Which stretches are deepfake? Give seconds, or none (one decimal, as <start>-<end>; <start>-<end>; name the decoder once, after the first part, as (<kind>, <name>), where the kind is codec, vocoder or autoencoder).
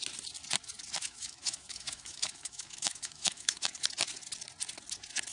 1.0-3.7 (autoencoder, DAC-VAE)